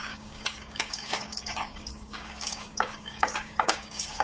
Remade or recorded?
remade